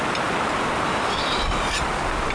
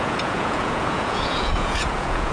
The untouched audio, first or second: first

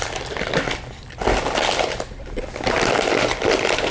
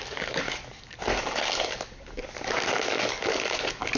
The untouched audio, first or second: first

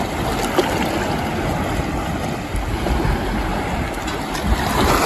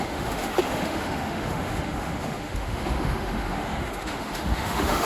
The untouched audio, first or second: first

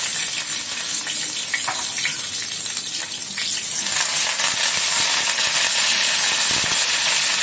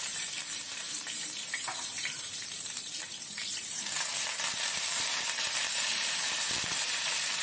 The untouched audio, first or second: first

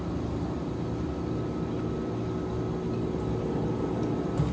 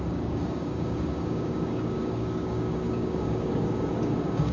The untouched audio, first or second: first